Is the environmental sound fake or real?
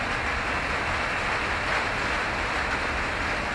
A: real